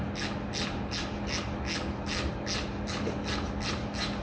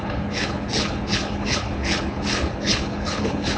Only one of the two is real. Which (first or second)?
first